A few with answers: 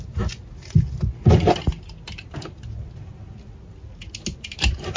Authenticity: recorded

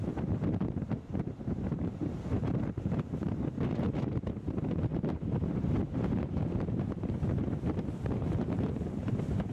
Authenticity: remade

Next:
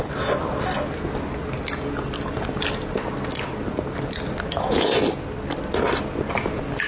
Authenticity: recorded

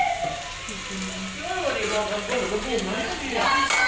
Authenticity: recorded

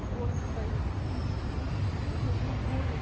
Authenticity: recorded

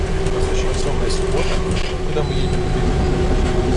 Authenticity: recorded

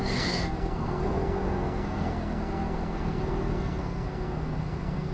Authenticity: remade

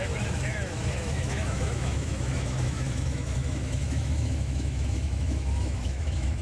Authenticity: remade